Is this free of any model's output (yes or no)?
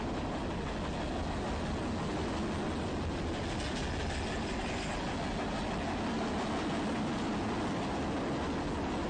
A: yes